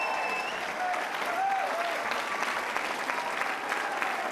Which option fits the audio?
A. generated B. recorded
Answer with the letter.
B